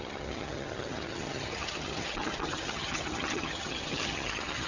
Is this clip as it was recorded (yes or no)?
no